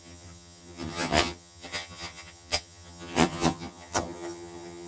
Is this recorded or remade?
remade